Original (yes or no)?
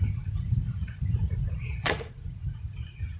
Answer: no